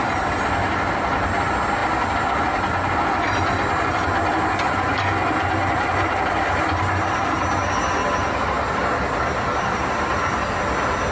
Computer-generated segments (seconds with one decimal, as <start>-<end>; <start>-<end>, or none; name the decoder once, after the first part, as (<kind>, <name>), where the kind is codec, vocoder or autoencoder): none

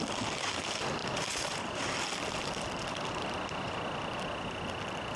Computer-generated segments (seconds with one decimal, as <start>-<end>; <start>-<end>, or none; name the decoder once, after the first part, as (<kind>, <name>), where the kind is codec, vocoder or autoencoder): none